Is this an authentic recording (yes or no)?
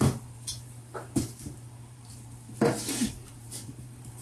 no